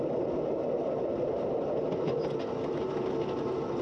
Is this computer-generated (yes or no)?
no